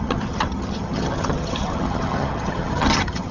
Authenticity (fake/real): fake